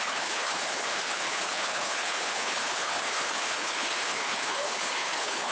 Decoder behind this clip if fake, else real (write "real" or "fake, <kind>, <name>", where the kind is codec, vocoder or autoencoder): fake, codec, HILCodec